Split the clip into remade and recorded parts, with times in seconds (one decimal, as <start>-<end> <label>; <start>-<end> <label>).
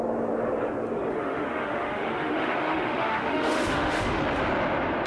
0.0-1.1 recorded; 1.1-4.2 remade; 4.2-5.1 recorded